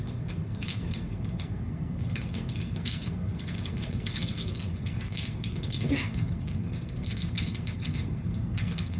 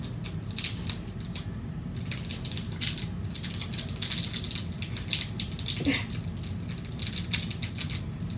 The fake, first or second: first